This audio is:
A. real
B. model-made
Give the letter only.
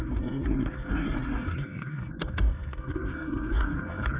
B